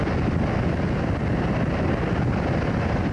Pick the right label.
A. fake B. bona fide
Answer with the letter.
B